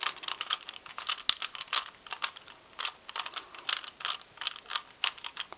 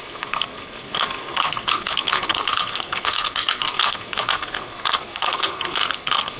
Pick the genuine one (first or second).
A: first